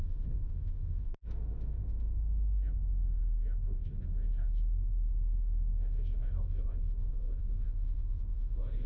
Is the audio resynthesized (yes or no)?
yes